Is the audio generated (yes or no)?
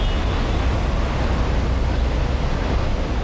no